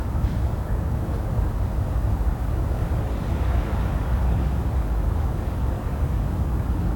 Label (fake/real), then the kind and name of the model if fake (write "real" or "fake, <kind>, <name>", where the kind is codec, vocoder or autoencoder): fake, codec, DAC